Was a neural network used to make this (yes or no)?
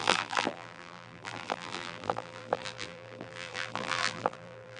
yes